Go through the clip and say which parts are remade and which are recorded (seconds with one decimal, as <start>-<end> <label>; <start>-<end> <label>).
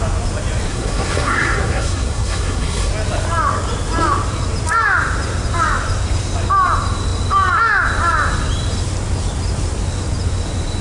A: 0.0-0.7 recorded; 0.7-2.9 remade; 2.9-10.8 recorded